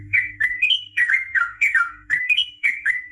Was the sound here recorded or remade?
remade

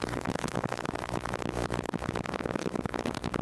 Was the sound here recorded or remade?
remade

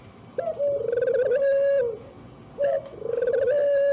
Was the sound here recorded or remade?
recorded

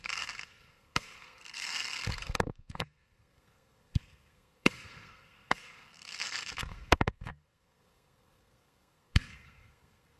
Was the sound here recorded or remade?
remade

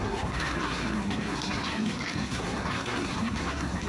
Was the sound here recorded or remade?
remade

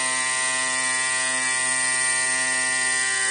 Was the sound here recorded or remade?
recorded